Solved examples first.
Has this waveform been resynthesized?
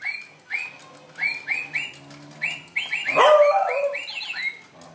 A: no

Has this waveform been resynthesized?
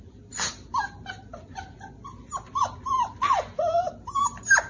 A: no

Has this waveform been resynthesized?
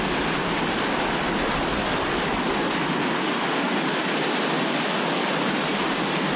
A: no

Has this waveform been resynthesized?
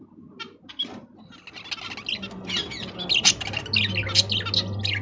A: no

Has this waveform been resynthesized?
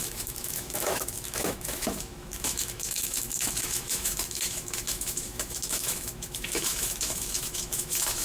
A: yes